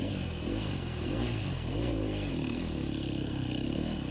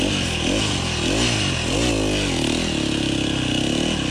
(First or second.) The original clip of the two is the second